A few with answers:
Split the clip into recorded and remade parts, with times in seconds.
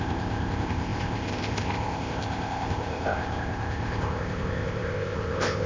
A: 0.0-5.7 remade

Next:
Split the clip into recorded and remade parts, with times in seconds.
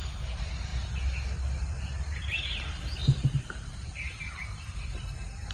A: 0.0-3.0 recorded; 3.0-5.1 remade; 5.1-5.5 recorded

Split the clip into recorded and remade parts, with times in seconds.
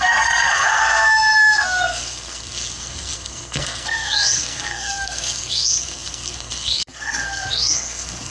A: 0.0-8.3 remade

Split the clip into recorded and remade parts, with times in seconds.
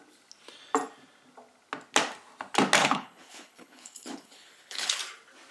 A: 0.0-2.8 recorded; 2.8-5.0 remade; 5.0-5.5 recorded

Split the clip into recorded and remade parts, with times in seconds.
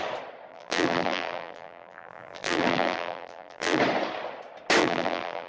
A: 0.0-0.5 recorded; 0.5-3.8 remade; 3.8-4.8 recorded; 4.8-5.5 remade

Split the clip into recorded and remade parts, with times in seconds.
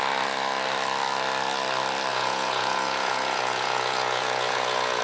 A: 0.0-2.1 recorded; 2.1-5.0 remade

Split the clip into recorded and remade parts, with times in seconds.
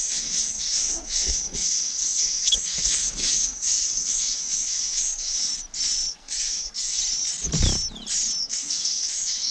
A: 0.0-5.5 remade; 5.5-6.1 recorded; 6.1-7.0 remade; 7.0-8.4 recorded; 8.4-9.5 remade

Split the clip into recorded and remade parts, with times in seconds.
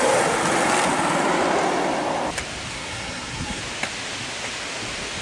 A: 0.0-2.7 recorded; 2.7-3.6 remade; 3.6-5.2 recorded